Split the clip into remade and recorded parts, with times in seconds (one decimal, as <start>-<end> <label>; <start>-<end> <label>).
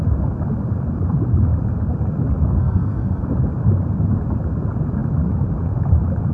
0.0-2.6 recorded; 2.6-3.2 remade; 3.2-6.3 recorded